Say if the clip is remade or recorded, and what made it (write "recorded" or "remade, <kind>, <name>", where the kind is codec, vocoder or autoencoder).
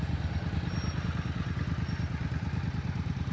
recorded